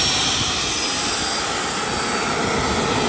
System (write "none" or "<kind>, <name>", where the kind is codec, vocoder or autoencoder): none